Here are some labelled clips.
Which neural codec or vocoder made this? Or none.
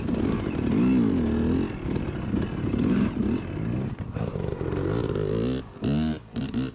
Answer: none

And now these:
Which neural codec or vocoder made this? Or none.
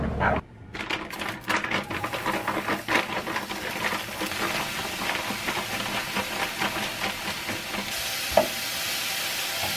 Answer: none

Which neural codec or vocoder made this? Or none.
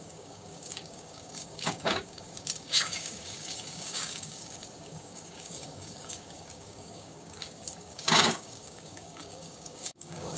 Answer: codec, DAC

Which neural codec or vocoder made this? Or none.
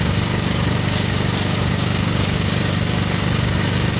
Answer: codec, DAC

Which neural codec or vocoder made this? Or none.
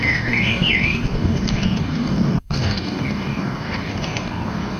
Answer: codec, DAC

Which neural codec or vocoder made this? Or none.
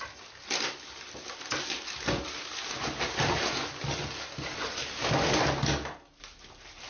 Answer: none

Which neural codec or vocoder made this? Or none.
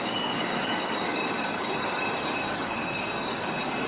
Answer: codec, DAC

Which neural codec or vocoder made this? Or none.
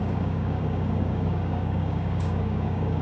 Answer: codec, DAC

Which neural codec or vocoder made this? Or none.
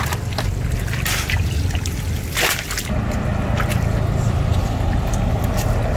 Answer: none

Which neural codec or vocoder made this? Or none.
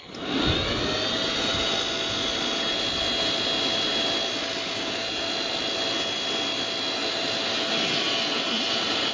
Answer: none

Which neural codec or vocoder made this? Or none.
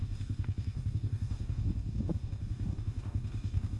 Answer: codec, DAC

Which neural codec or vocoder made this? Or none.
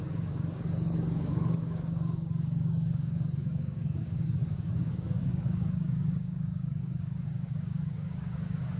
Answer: codec, DAC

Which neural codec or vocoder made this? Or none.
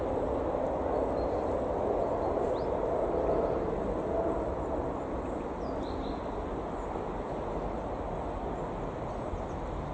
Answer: none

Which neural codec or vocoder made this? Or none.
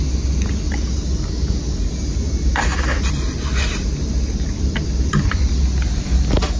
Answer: none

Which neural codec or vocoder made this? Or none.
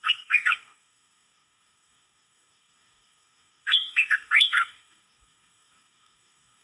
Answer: codec, DAC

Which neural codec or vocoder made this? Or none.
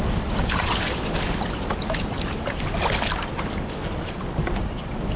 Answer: none